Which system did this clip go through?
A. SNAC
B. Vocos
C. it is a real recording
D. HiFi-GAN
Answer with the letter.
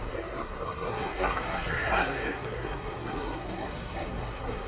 A